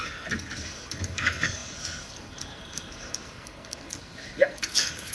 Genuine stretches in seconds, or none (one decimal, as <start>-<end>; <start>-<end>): none